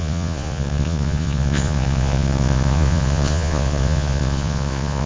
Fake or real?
fake